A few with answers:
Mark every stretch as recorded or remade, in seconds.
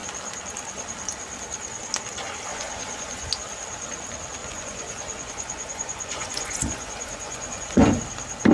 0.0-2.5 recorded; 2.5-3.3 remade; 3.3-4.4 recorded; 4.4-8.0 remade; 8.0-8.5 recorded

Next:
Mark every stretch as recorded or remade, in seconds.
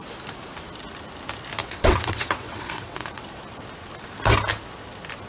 0.0-1.6 recorded; 1.6-3.4 remade; 3.4-5.3 recorded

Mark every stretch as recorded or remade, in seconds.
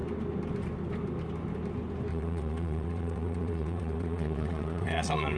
0.0-2.1 recorded; 2.1-5.4 remade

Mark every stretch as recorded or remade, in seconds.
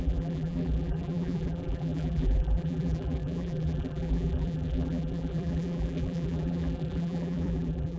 0.0-8.0 remade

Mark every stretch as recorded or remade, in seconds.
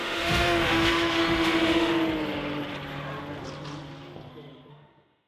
0.0-1.9 remade; 1.9-4.7 recorded; 4.7-5.3 remade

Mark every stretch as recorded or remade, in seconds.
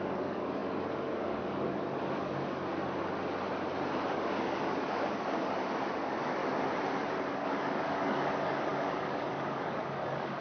0.0-2.7 remade; 2.7-4.1 recorded; 4.1-6.4 remade; 6.4-7.3 recorded; 7.3-10.4 remade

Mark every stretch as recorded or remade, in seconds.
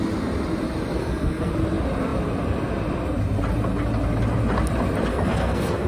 0.0-1.0 recorded; 1.0-1.5 remade; 1.5-5.1 recorded; 5.1-5.9 remade